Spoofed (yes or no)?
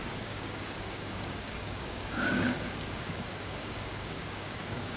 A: yes